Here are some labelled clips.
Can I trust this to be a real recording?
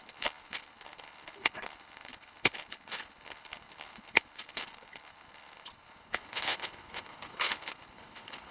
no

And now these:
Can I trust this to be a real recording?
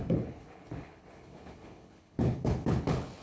no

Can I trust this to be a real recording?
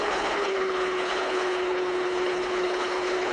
no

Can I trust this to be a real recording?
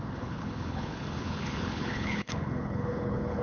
no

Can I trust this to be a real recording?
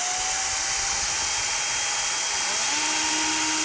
yes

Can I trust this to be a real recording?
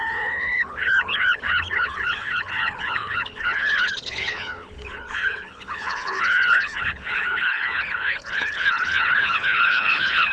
no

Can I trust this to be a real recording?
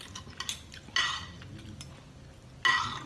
yes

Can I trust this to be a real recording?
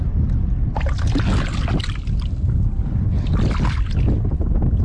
yes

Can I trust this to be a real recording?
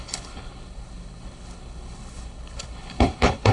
no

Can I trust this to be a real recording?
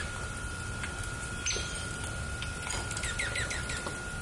yes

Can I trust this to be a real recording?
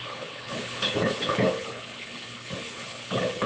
no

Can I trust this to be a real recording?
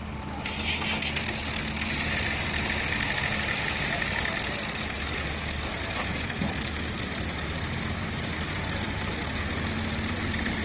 yes